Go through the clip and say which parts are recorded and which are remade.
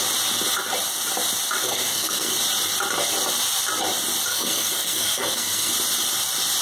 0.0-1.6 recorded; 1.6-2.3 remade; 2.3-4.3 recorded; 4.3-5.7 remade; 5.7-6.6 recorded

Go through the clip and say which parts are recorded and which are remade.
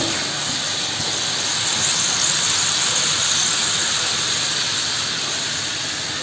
0.0-6.2 recorded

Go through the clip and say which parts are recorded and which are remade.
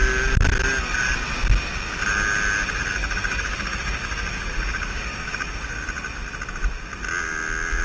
0.0-3.0 recorded; 3.0-5.6 remade; 5.6-7.8 recorded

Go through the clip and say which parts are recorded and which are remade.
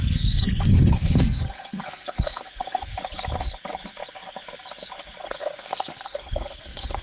0.0-2.9 remade; 2.9-5.2 recorded; 5.2-7.0 remade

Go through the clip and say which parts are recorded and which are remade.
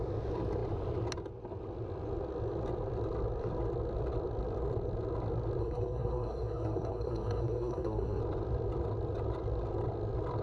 0.0-5.6 recorded; 5.6-8.2 remade; 8.2-10.4 recorded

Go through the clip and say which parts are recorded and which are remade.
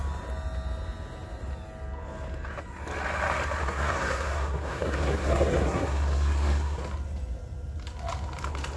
0.0-3.6 recorded; 3.6-6.8 remade; 6.8-8.8 recorded